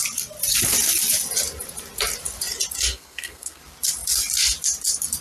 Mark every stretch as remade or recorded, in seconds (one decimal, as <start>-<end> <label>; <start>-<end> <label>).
0.0-2.9 recorded; 2.9-3.6 remade; 3.6-5.2 recorded